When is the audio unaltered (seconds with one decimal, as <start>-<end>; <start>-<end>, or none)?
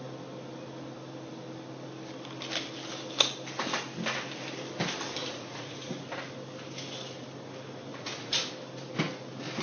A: 0.0-5.2; 6.0-7.9; 8.5-9.6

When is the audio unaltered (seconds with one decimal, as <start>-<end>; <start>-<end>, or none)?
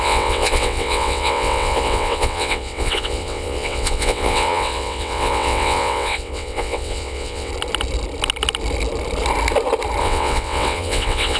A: 7.5-10.0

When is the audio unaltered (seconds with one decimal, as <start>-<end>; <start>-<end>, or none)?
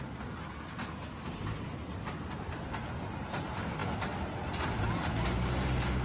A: 0.0-6.0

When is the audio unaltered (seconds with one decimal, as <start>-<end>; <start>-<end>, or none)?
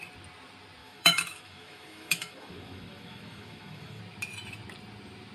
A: 0.0-0.8; 4.0-5.3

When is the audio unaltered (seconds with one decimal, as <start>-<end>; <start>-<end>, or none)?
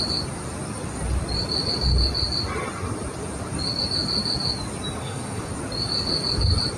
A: 0.0-5.0; 5.5-6.8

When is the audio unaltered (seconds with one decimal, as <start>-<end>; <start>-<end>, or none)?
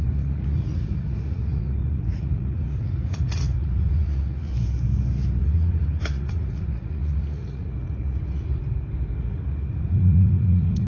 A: 4.5-5.4; 8.6-9.2